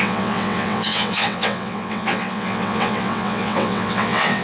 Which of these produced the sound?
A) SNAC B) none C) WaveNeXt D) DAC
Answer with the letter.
C